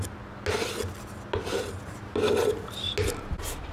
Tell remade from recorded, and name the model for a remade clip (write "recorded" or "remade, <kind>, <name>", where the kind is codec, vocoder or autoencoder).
recorded